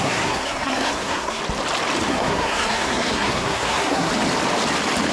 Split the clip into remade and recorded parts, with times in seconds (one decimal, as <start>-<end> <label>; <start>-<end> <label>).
0.0-1.4 remade; 1.4-2.1 recorded; 2.1-4.1 remade; 4.1-5.1 recorded